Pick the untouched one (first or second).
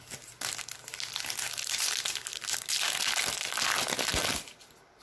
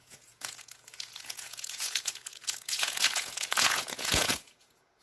first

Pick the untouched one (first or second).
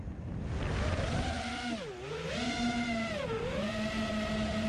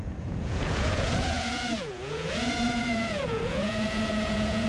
first